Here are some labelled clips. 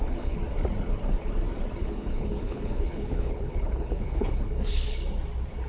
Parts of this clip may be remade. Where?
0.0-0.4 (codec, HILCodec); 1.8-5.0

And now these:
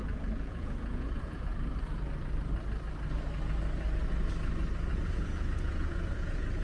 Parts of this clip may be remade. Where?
0.0-1.5 (vocoder, Vocos); 4.9-6.6

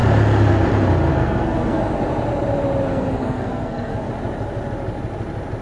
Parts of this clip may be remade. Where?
1.1-1.8 (codec, SNAC); 2.9-4.1

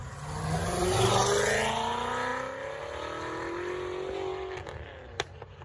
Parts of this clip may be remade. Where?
none

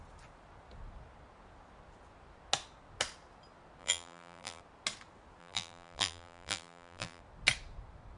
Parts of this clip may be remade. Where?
3.8-4.6 (vocoder, BigVGAN v2); 5.4-7.2

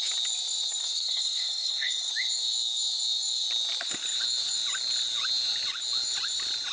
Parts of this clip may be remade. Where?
0.8-2.1 (codec, SNAC)

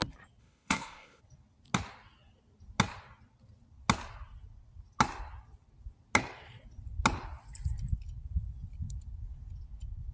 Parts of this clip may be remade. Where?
0.4-1.2 (codec, ZipCodec)

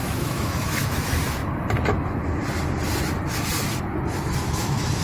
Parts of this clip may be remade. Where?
0.0-1.4 (autoencoder, DAC-VAE); 4.4-5.0